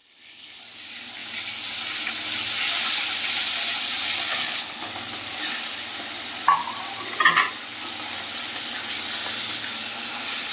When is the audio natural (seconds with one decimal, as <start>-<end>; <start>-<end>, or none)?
0.6-4.3; 4.9-10.5